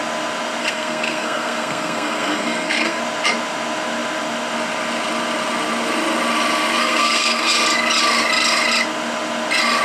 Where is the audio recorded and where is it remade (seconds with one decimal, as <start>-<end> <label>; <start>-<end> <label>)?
0.0-0.6 recorded; 0.6-3.0 remade; 3.0-6.8 recorded; 6.8-7.5 remade; 7.5-9.8 recorded